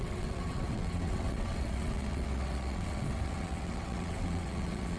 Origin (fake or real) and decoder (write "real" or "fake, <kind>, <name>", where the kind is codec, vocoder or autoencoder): fake, vocoder, WaveNeXt